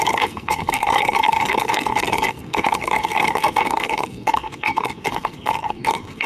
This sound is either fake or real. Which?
fake